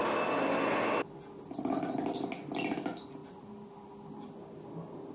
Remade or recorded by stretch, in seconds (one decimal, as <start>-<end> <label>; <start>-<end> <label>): 0.0-5.1 recorded

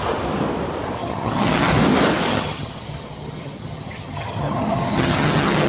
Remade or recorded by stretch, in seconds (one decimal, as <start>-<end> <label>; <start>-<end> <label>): 0.0-1.0 recorded; 1.0-1.7 remade; 1.7-2.3 recorded; 2.3-5.7 remade

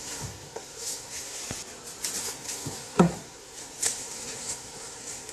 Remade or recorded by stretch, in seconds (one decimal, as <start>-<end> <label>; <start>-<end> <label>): 0.0-1.4 remade; 1.4-2.2 recorded; 2.2-5.3 remade

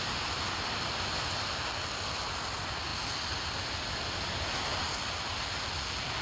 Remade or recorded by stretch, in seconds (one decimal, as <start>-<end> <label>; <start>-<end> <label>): 0.0-6.2 recorded

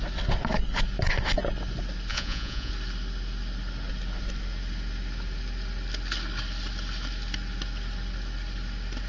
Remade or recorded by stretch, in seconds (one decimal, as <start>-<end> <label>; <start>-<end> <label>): 0.0-2.1 recorded; 2.1-2.7 remade; 2.7-9.1 recorded